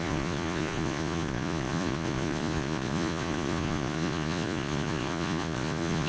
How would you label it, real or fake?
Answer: fake